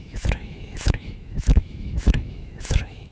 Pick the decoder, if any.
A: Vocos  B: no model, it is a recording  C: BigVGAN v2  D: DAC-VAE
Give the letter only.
D